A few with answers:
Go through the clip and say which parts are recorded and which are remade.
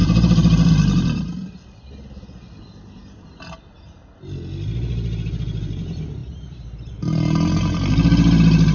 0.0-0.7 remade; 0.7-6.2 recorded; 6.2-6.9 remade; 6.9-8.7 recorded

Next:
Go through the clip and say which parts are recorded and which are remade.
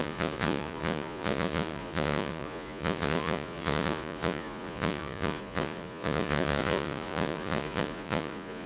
0.0-8.7 remade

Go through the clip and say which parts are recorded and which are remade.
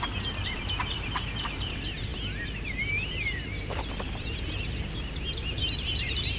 0.0-6.4 remade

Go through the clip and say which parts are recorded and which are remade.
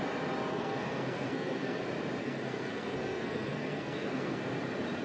0.0-0.5 recorded; 0.5-1.8 remade; 1.8-2.2 recorded; 2.2-4.4 remade; 4.4-5.0 recorded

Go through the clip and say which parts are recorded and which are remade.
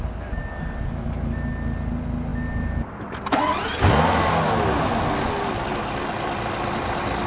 0.0-7.3 recorded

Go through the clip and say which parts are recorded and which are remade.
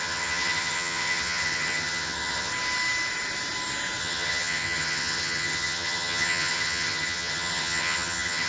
0.0-2.5 remade; 2.5-4.0 recorded; 4.0-8.5 remade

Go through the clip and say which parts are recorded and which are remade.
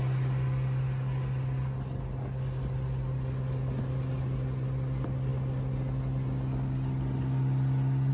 0.0-8.1 recorded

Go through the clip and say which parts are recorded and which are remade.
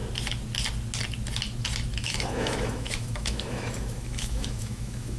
0.0-2.0 recorded; 2.0-5.2 remade